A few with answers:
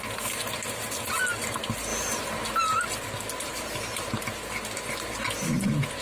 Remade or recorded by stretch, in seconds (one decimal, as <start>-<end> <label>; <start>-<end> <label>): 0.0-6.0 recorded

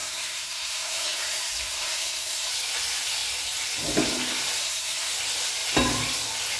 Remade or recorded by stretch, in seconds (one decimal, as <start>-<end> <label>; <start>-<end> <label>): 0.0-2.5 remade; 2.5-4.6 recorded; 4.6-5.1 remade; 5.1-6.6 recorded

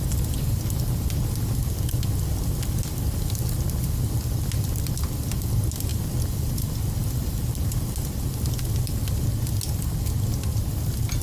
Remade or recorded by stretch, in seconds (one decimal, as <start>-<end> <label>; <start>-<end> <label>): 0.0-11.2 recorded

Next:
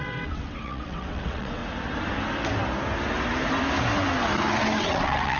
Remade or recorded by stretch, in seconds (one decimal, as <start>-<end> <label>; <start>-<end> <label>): 0.0-1.6 remade; 1.6-4.8 recorded; 4.8-5.4 remade

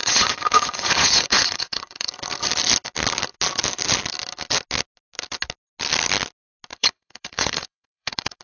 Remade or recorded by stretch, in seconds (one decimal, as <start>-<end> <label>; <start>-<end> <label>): 0.0-2.1 remade; 2.1-6.7 recorded; 6.7-8.4 remade

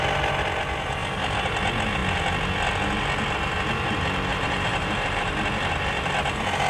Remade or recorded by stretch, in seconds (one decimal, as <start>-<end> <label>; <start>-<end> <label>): 0.0-4.3 recorded; 4.3-5.3 remade; 5.3-6.7 recorded